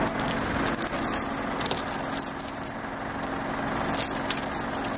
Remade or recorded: recorded